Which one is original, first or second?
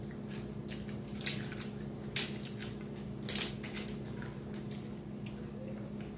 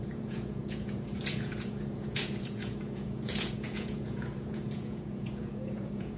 first